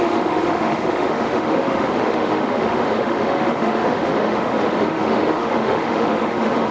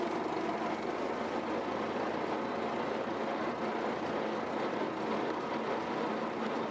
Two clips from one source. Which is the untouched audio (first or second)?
second